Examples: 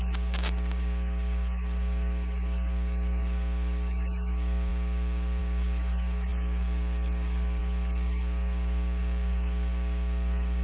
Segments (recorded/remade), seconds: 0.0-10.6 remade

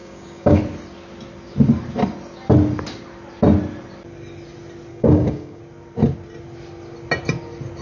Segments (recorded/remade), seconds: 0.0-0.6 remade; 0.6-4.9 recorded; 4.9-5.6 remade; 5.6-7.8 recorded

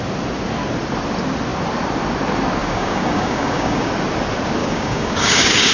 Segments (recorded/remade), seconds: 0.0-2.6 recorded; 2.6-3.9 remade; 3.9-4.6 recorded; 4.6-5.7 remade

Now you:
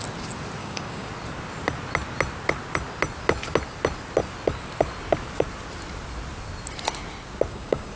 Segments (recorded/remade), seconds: 0.0-0.6 recorded; 0.6-1.1 remade; 1.1-7.5 recorded; 7.5-8.0 remade